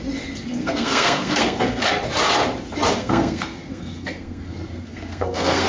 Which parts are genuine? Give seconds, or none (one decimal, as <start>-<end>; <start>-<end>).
0.0-0.6; 1.9-3.0

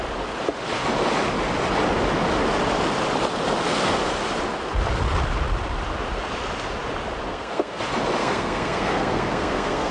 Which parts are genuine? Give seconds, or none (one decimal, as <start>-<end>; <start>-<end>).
0.0-7.3; 7.8-8.2